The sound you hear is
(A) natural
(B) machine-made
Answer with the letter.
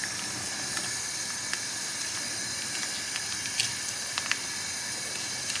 A